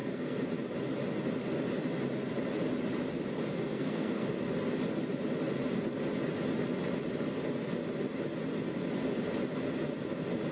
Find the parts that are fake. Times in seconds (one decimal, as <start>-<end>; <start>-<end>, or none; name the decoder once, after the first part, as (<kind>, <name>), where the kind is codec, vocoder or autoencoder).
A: 0.0-0.5 (codec, SNAC); 3.5-4.3